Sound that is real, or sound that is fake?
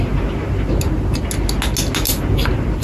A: real